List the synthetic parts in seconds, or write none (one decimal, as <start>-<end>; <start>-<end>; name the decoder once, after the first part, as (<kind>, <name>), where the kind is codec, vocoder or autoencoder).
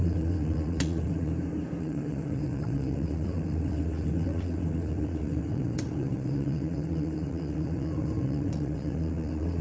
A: 0.0-1.3 (vocoder, WaveNeXt); 1.8-9.6